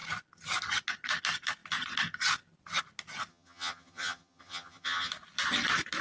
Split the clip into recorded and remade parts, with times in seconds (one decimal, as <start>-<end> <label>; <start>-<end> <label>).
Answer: 0.0-3.3 recorded; 3.3-5.1 remade; 5.1-6.0 recorded